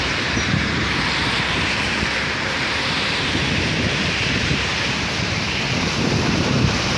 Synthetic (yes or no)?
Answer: yes